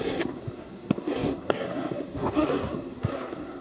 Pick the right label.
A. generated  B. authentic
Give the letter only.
A